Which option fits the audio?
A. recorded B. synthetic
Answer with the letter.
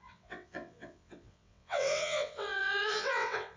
B